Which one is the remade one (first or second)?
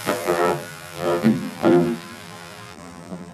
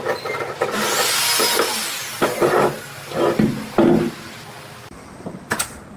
first